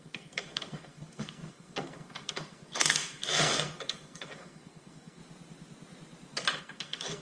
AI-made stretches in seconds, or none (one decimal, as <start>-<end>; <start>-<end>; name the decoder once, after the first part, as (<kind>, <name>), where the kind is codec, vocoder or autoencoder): 0.0-5.2 (codec, SNAC); 6.6-7.2